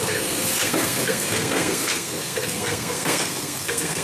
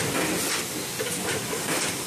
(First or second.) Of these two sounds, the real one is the second